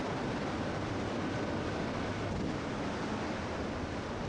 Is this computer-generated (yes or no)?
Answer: no